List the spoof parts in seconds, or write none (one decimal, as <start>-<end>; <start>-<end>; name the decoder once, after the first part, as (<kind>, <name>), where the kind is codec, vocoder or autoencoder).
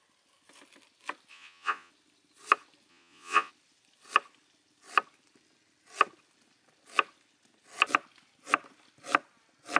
1.3-1.9 (vocoder, Vocos); 2.9-3.5